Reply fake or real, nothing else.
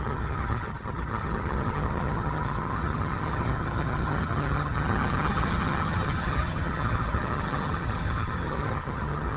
fake